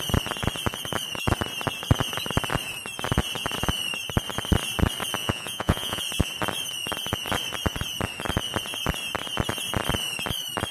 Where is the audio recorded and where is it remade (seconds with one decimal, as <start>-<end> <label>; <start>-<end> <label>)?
0.0-5.2 recorded; 5.2-6.0 remade; 6.0-10.7 recorded